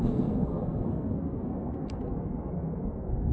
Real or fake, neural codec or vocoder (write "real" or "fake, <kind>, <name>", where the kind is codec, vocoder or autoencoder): fake, codec, SNAC